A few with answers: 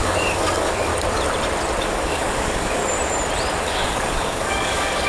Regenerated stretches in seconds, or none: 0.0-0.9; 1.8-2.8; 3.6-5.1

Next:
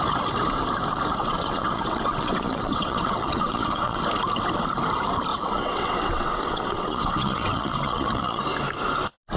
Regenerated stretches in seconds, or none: 1.2-4.0; 5.3-8.4

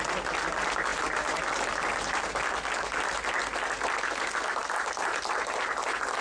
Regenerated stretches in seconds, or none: 0.9-1.5